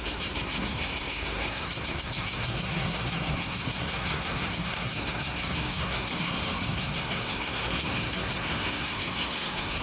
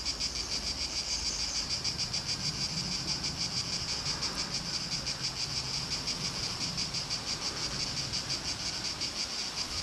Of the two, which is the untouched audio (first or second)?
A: second